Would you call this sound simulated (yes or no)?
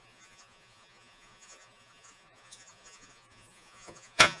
yes